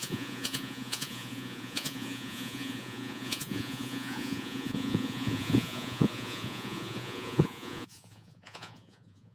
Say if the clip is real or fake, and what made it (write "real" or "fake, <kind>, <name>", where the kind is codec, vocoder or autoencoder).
fake, vocoder, Vocos